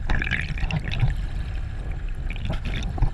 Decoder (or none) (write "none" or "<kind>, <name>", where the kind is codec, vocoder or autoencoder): none